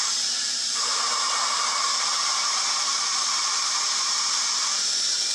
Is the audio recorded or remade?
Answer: remade